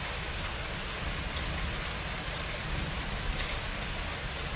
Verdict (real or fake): real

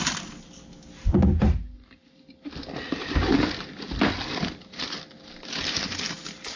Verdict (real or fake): real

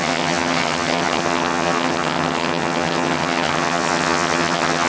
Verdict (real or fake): fake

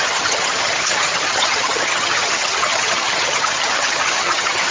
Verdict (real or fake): fake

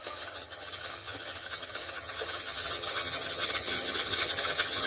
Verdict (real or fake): fake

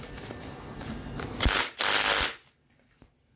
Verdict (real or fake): real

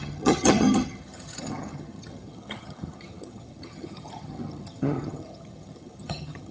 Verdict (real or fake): fake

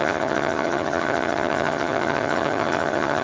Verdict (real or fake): fake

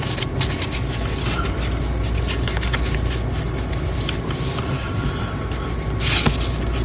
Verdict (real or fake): real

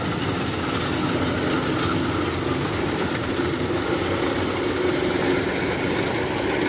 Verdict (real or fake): real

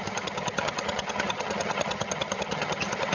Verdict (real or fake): fake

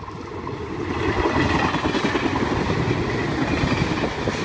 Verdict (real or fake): real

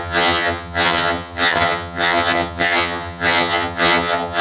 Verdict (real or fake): fake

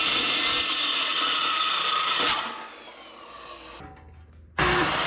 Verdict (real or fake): real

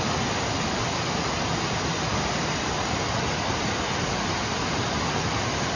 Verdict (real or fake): real